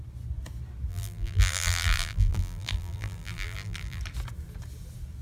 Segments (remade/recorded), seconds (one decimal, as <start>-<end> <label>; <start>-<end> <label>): 0.0-0.9 recorded; 0.9-4.0 remade; 4.0-5.2 recorded